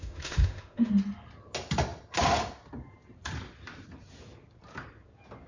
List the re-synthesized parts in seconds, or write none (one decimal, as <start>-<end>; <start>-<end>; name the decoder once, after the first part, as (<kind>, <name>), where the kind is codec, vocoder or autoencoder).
0.0-0.9 (autoencoder, DAC-VAE)